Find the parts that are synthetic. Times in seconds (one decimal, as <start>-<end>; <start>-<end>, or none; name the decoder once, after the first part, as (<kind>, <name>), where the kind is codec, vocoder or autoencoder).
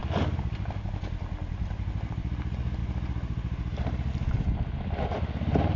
none